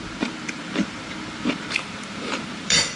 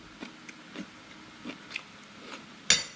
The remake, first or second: first